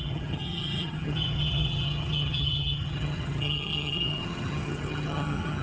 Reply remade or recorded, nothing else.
remade